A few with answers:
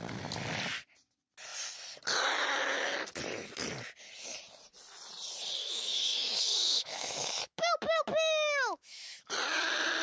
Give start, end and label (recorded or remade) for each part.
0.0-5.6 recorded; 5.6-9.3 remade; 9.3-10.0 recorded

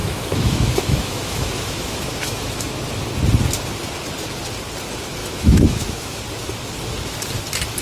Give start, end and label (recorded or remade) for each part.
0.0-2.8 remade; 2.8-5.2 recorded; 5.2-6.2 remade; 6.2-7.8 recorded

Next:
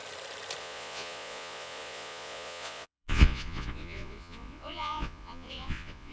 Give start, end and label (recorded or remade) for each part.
0.0-0.6 recorded; 0.6-6.1 remade